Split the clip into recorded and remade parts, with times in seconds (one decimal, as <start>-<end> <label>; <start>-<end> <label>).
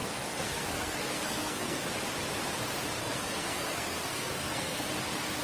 0.0-1.9 remade; 1.9-3.0 recorded; 3.0-4.9 remade; 4.9-5.4 recorded